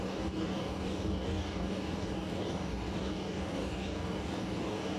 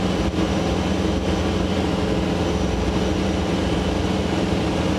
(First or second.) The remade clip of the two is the first